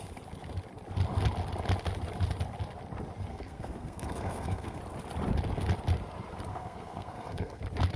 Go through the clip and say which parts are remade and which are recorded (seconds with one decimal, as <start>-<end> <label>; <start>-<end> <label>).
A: 0.0-3.3 recorded; 3.3-4.8 remade; 4.8-6.5 recorded; 6.5-7.6 remade; 7.6-8.0 recorded